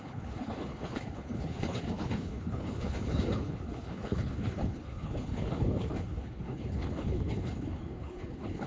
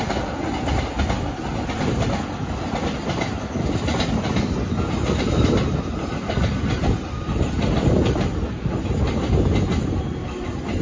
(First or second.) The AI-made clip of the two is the first